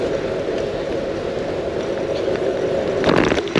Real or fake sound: real